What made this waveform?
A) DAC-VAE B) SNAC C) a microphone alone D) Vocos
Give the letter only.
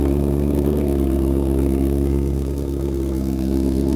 B